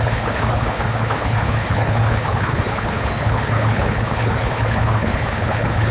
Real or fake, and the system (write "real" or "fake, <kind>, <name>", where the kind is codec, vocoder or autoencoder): fake, codec, HILCodec